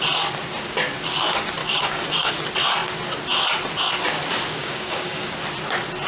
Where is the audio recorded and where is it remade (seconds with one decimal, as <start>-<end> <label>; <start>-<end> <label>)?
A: 0.0-1.6 recorded; 1.6-2.3 remade; 2.3-4.6 recorded; 4.6-5.3 remade; 5.3-6.1 recorded